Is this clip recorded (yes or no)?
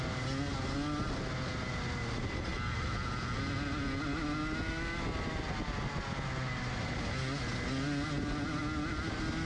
yes